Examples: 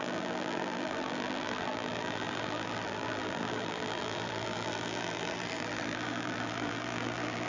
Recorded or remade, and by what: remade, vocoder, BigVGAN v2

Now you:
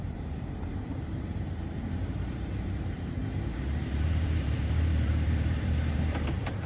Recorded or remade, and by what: remade, vocoder, BigVGAN v2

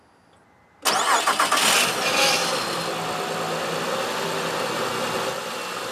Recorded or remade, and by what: recorded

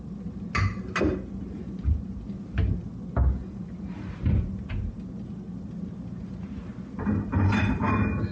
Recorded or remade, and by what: recorded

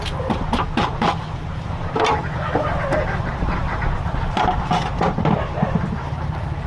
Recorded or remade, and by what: remade, vocoder, BigVGAN v2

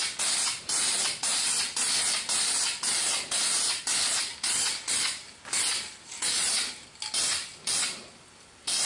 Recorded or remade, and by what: remade, vocoder, BigVGAN v2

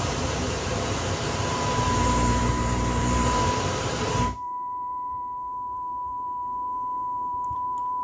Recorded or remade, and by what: remade, vocoder, BigVGAN v2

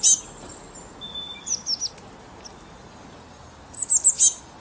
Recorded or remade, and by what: recorded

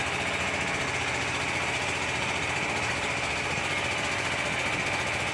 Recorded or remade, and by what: recorded